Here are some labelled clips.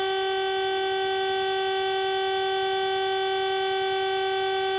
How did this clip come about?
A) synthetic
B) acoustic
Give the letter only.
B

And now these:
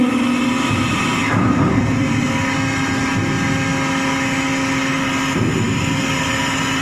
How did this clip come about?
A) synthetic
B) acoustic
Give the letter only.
B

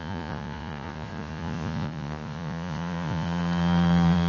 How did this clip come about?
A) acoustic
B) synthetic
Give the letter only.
B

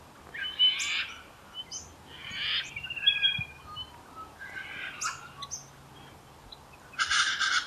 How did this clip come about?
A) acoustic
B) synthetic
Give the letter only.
A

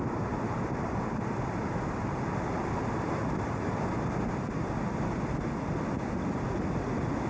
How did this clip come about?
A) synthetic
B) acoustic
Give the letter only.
B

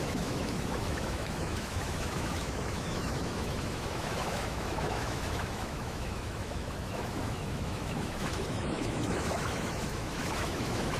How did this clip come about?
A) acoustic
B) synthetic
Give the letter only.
B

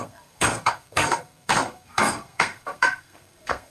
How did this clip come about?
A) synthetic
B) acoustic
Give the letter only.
A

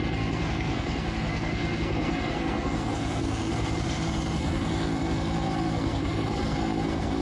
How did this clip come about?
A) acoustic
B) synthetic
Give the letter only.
B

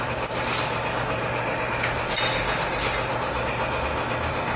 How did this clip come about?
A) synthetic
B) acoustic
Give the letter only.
B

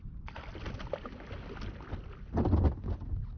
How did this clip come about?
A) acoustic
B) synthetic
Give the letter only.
A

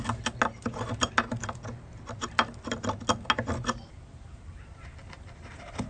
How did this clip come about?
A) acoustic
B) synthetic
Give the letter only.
A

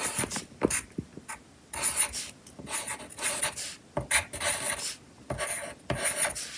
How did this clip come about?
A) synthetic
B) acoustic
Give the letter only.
B